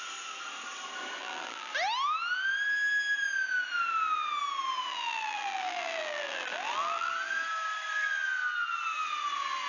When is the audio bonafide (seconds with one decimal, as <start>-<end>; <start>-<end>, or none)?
0.0-1.2; 1.7-4.9; 7.1-9.7